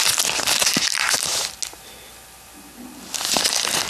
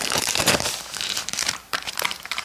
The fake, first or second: second